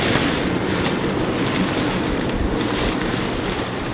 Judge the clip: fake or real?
real